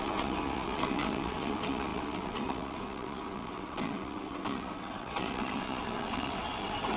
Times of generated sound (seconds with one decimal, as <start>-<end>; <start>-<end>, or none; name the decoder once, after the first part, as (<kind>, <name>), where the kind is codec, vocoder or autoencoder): 0.0-7.0 (vocoder, WaveNeXt)